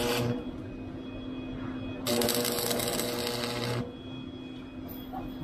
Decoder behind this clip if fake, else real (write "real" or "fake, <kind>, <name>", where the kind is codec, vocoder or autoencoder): real